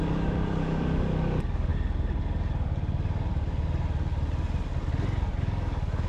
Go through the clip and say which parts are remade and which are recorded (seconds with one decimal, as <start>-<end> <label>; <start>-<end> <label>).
0.0-1.7 remade; 1.7-5.4 recorded; 5.4-6.1 remade